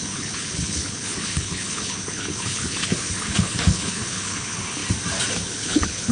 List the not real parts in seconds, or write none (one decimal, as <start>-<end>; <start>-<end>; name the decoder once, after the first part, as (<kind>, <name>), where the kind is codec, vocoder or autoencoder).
0.0-4.8 (codec, HILCodec); 5.4-6.1